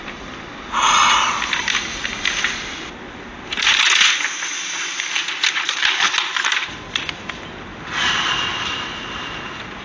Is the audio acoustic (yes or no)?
yes